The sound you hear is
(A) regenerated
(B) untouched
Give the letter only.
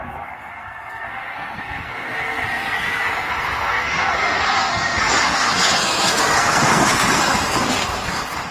A